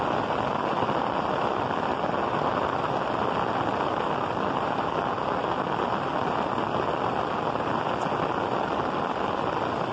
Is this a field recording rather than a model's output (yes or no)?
yes